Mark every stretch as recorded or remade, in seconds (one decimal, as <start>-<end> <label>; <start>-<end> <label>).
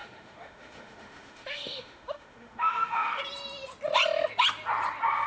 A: 0.0-3.2 remade; 3.2-5.3 recorded